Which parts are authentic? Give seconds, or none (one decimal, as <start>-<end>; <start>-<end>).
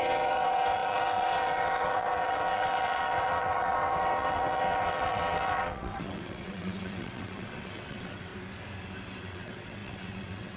8.3-9.2